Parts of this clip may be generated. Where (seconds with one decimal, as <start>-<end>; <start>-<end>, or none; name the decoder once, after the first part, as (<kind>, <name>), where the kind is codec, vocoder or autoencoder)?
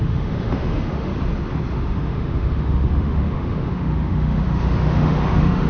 0.0-1.1 (autoencoder, DAC-VAE); 1.7-5.7